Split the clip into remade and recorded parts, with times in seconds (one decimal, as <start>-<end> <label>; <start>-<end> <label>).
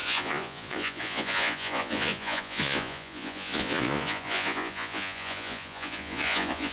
0.0-6.7 remade